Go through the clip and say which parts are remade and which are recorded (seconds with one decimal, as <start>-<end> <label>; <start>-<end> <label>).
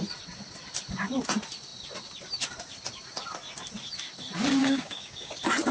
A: 0.0-4.6 recorded; 4.6-5.3 remade; 5.3-5.7 recorded